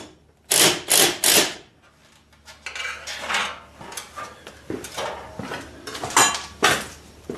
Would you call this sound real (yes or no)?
yes